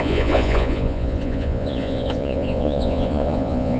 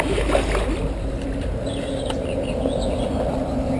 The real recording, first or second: second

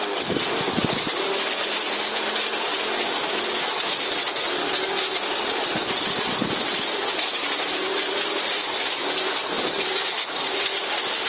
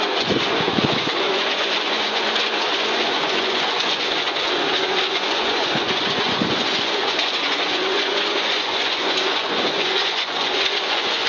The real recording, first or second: first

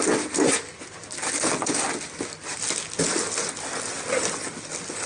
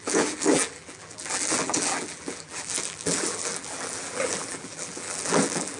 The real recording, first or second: first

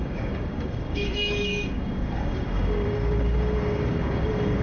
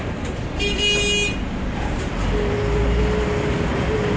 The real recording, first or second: second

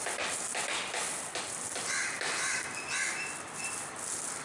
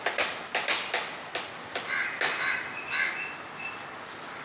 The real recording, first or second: second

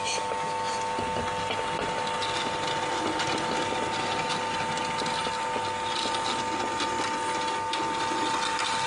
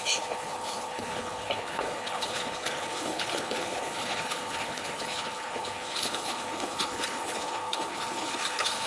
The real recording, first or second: first